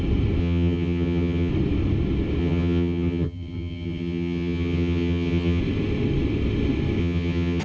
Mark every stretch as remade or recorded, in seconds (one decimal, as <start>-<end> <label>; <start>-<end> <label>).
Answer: 0.0-0.4 recorded; 0.4-1.5 remade; 1.5-2.4 recorded; 2.4-5.6 remade; 5.6-7.0 recorded; 7.0-7.6 remade